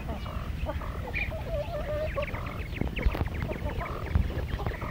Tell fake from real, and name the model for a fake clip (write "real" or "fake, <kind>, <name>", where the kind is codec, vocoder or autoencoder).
real